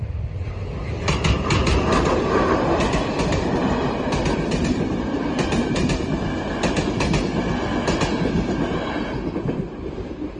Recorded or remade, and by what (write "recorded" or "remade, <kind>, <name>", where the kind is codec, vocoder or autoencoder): recorded